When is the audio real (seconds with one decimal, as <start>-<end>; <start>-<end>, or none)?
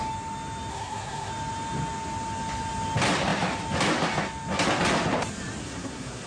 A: 0.0-0.7; 1.3-5.6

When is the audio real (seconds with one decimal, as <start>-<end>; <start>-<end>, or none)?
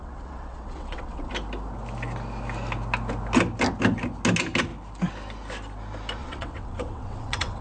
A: 1.3-6.2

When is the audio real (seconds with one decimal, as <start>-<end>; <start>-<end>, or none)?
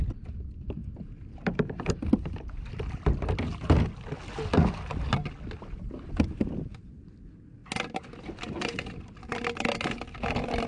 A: 0.0-0.8; 2.1-10.7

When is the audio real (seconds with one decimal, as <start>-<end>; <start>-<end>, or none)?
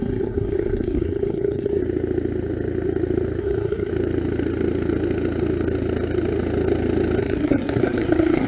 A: 1.8-3.4; 3.9-7.2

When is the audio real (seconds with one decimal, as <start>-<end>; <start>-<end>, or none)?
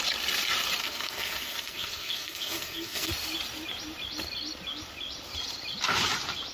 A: 0.0-0.8; 3.1-6.5